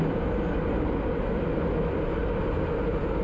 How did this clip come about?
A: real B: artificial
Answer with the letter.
A